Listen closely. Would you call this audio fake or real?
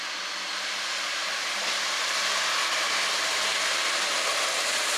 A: real